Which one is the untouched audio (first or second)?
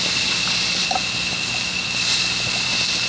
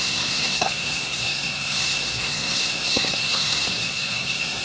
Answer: first